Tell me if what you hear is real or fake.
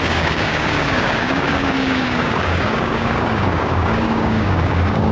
fake